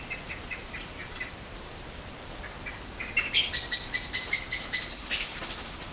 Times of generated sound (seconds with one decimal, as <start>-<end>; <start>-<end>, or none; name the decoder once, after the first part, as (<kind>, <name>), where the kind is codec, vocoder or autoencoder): 4.9-5.4 (autoencoder, DAC-VAE)